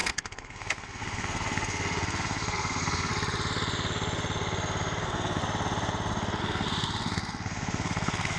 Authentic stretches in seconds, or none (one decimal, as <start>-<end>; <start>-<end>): 3.1-5.0; 5.4-6.4